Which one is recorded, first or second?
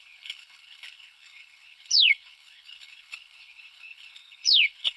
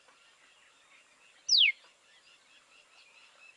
second